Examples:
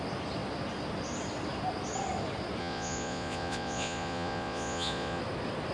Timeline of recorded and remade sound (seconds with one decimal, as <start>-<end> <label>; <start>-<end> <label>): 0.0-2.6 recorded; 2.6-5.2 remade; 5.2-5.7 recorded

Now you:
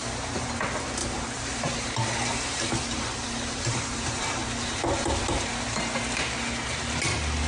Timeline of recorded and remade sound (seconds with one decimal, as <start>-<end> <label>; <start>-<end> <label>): 0.0-0.5 remade; 0.5-1.0 recorded; 1.0-5.5 remade; 5.5-7.5 recorded

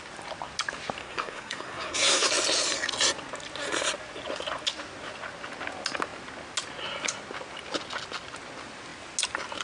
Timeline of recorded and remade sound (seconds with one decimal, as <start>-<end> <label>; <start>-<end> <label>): 0.0-1.0 recorded; 1.0-2.3 remade; 2.3-9.6 recorded

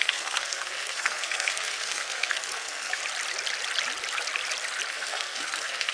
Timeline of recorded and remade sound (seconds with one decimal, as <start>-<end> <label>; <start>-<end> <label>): 0.0-3.0 remade; 3.0-4.9 recorded; 4.9-5.9 remade

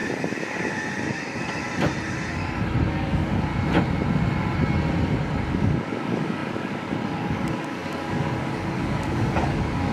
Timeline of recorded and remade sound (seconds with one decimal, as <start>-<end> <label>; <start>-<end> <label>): 0.0-2.9 recorded; 2.9-3.5 remade; 3.5-5.5 recorded; 5.5-9.9 remade